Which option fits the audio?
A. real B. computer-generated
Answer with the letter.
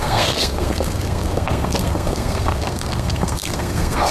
B